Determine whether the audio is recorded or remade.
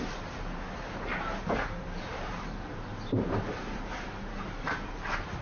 remade